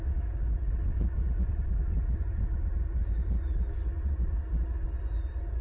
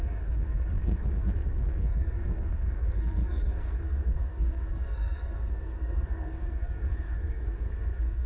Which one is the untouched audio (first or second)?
first